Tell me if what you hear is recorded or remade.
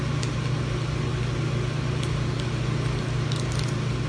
recorded